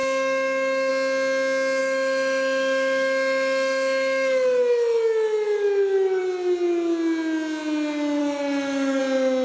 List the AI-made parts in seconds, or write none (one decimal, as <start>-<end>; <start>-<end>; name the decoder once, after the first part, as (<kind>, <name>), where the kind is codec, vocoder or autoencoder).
0.0-0.9 (autoencoder, DAC-VAE); 1.8-6.2; 8.2-9.0